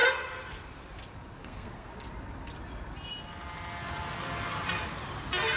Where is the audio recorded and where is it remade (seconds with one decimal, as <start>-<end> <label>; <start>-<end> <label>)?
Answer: 0.0-1.4 recorded; 1.4-1.9 remade; 1.9-5.6 recorded